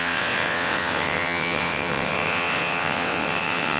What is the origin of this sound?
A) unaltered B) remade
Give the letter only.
B